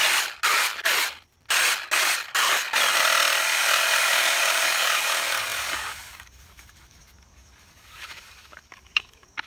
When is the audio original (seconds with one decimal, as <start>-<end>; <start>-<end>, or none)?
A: 0.0-3.6